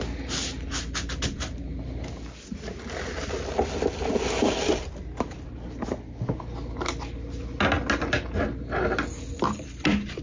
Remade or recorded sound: recorded